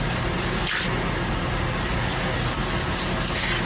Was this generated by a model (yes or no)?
no